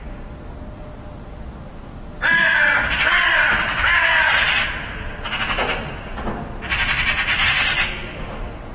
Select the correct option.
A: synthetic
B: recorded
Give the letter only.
B